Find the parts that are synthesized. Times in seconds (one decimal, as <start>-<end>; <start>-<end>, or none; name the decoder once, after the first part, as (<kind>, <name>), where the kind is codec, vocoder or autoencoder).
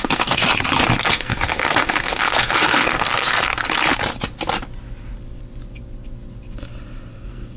0.0-0.4 (codec, SNAC); 1.1-3.5; 7.1-7.6